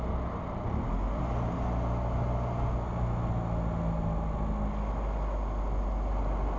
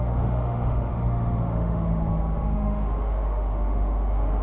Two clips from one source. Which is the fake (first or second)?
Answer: second